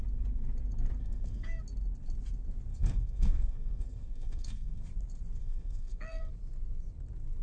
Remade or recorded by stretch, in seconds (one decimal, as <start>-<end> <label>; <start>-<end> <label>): 0.0-1.0 recorded; 1.0-1.6 remade; 1.6-2.7 recorded; 2.7-4.8 remade; 4.8-5.4 recorded; 5.4-6.3 remade; 6.3-7.4 recorded